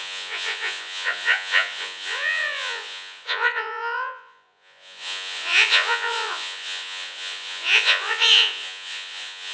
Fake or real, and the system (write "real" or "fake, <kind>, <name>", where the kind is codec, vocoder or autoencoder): fake, vocoder, Vocos